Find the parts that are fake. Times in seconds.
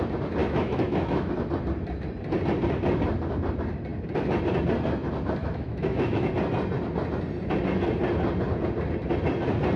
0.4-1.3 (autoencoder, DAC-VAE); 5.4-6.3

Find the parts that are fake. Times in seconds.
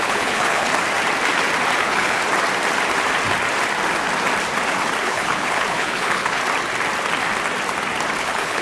0.0-0.7 (codec, HILCodec); 1.8-2.2; 5.0-6.4; 8.2-8.6